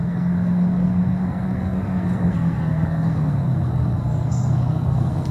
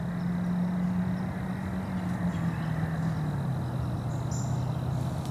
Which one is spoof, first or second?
first